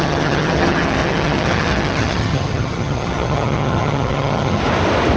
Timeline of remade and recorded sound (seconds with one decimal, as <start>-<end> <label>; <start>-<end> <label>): 0.0-4.6 remade; 4.6-5.2 recorded